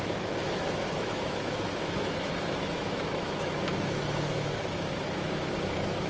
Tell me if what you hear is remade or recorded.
remade